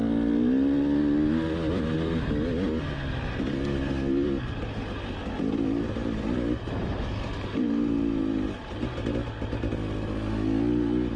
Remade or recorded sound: recorded